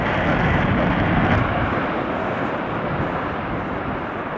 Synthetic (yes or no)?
no